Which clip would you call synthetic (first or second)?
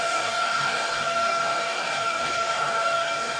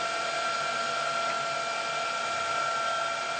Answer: first